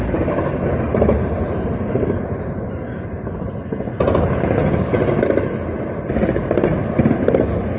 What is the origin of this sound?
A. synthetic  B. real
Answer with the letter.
B